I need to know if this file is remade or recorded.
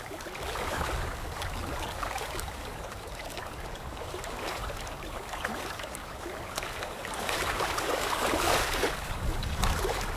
remade